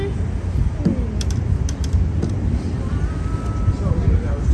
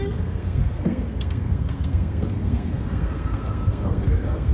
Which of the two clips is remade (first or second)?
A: second